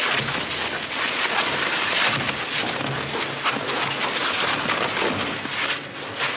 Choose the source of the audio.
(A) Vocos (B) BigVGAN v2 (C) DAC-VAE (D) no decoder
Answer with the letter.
D